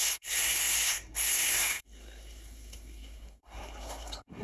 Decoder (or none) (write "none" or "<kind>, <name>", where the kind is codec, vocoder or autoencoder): codec, SNAC